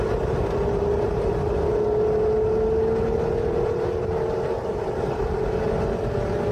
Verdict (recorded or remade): recorded